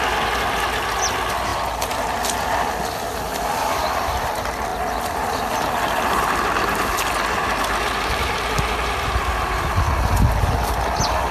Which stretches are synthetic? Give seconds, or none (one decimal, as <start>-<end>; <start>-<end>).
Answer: none